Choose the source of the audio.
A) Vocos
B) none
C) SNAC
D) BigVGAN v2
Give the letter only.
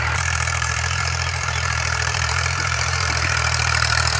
D